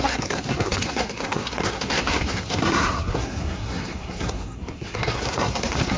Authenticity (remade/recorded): remade